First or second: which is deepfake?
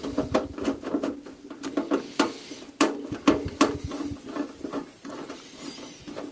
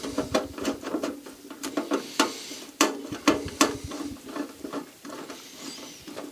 second